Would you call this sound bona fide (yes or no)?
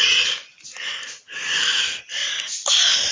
yes